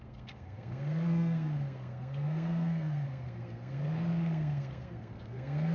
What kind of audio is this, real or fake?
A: fake